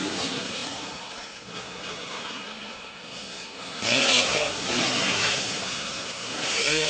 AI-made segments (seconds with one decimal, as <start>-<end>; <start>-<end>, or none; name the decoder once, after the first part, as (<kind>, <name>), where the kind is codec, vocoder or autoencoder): 0.0-6.9 (codec, SNAC)

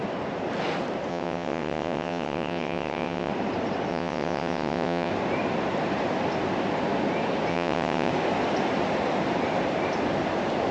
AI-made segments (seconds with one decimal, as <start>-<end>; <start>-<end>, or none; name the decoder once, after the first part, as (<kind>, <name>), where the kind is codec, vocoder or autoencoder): 1.1-3.3 (vocoder, WaveNeXt); 3.9-5.1; 7.5-8.1

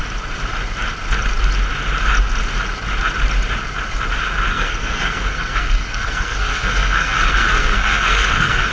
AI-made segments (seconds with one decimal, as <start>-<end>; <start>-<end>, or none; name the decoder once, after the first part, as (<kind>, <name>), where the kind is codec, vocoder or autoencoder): 4.5-8.7 (codec, SNAC)

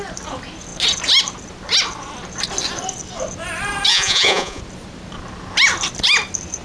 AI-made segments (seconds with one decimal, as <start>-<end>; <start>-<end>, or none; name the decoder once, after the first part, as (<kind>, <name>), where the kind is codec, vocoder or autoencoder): 3.9-4.6 (vocoder, Vocos)

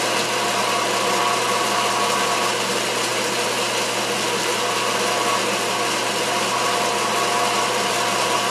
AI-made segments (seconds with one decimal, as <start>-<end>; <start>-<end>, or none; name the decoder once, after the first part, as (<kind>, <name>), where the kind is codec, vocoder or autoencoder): none

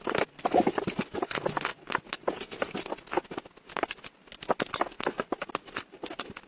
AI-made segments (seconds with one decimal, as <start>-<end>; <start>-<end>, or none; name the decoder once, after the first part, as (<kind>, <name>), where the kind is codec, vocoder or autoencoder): none

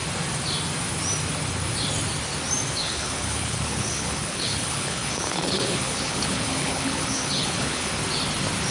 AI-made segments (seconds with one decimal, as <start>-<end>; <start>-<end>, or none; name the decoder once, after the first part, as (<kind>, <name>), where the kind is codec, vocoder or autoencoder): 2.8-7.9 (codec, HILCodec)